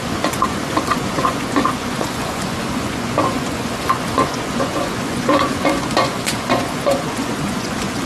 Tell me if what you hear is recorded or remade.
remade